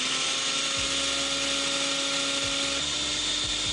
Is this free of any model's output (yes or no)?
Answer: yes